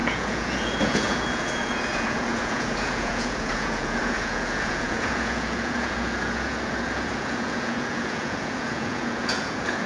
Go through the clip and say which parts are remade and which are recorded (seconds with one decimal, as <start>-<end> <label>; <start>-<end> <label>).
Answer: 0.0-9.9 remade

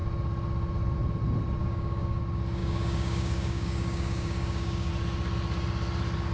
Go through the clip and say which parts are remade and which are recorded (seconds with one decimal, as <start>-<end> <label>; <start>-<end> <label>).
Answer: 0.0-1.6 recorded; 1.6-2.2 remade; 2.2-2.6 recorded; 2.6-4.9 remade; 4.9-6.3 recorded

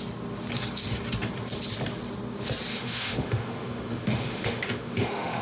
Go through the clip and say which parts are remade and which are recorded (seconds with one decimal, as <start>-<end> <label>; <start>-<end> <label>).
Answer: 0.0-2.7 recorded; 2.7-5.4 remade

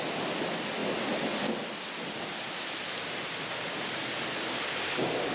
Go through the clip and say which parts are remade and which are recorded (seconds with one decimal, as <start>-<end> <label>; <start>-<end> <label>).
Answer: 0.0-5.3 recorded

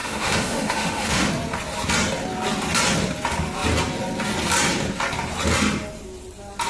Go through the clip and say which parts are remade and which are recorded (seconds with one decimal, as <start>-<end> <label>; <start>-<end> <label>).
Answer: 0.0-1.3 remade; 1.3-6.7 recorded

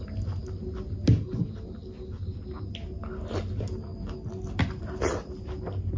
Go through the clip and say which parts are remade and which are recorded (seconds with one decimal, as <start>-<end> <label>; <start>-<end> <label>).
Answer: 0.0-6.0 recorded

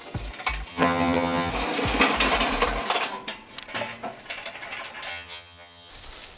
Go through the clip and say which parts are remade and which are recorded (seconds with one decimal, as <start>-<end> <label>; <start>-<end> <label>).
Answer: 0.0-0.7 recorded; 0.7-1.5 remade; 1.5-5.1 recorded; 5.1-5.9 remade; 5.9-6.4 recorded